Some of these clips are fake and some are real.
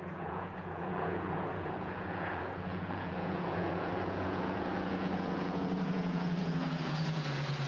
fake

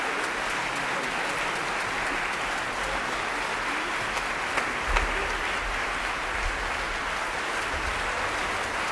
real